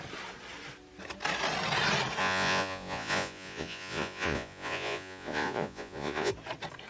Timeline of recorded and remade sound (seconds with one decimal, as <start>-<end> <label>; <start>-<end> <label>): 0.0-2.2 recorded; 2.2-6.3 remade; 6.3-6.9 recorded